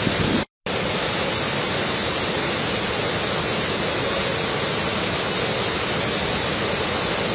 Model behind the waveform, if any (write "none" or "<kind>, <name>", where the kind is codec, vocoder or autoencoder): none